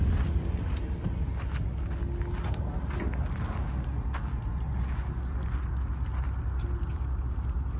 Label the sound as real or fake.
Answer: real